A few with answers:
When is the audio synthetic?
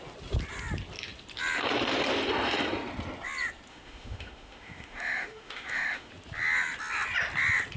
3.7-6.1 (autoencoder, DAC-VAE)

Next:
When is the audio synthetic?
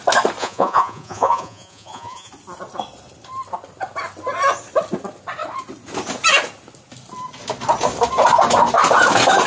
0.4-2.3 (vocoder, Vocos)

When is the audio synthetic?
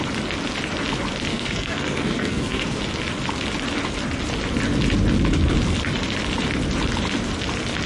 1.3-2.8 (codec, SNAC)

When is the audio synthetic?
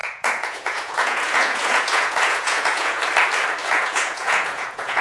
0.0-3.0 (vocoder, Vocos); 3.6-5.0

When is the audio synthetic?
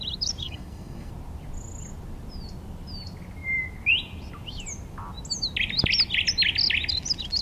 0.4-1.1 (codec, SNAC)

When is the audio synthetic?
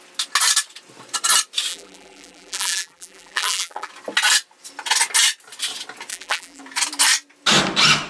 1.7-3.9 (vocoder, BigVGAN v2); 6.1-6.6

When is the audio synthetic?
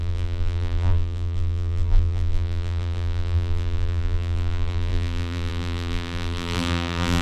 0.0-7.2 (vocoder, BigVGAN v2)